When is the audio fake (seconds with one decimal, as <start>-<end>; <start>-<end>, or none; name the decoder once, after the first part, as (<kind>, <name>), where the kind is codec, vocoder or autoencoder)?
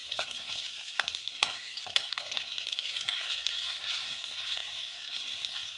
0.0-5.8 (codec, SNAC)